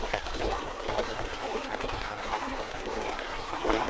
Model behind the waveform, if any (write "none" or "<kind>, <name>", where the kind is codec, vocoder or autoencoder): codec, SNAC